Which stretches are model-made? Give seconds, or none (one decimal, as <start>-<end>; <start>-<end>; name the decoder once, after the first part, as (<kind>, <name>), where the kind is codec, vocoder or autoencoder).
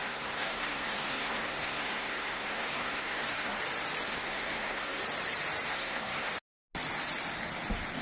0.0-3.6 (codec, SNAC); 4.1-5.0; 5.7-6.3